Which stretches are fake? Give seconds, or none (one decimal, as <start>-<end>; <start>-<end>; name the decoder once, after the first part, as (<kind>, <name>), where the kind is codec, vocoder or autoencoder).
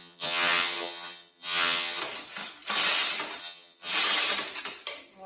0.0-2.0 (vocoder, HiFi-GAN); 3.4-3.9